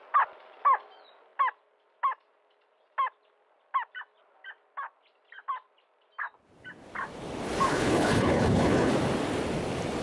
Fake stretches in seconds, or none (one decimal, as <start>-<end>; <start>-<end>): 7.7-8.9